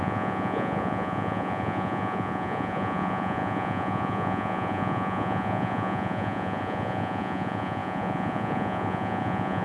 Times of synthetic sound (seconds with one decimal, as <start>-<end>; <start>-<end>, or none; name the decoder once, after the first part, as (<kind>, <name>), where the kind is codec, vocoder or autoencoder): 0.0-9.6 (vocoder, Vocos)